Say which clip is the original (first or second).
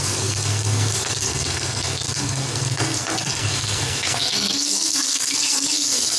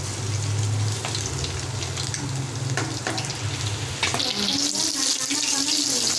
second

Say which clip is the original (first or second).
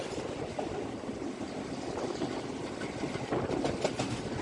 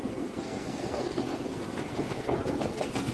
first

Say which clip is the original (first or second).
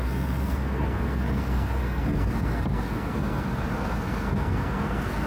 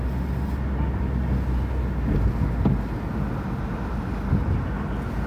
second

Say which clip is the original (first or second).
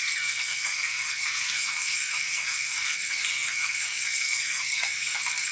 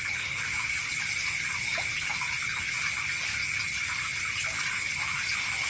second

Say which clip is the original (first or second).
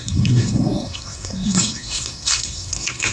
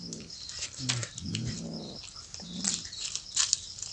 second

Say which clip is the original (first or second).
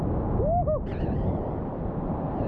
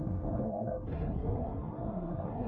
first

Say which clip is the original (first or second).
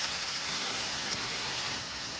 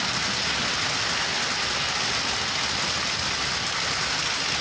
second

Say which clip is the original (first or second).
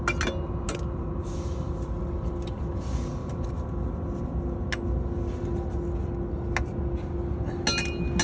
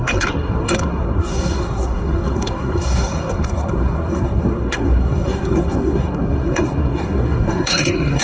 first